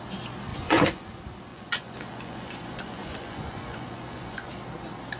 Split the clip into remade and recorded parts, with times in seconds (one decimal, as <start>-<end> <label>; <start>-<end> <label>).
0.0-0.5 recorded; 0.5-1.1 remade; 1.1-1.5 recorded; 1.5-4.5 remade; 4.5-5.2 recorded